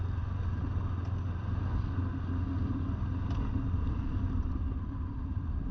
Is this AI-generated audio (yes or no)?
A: no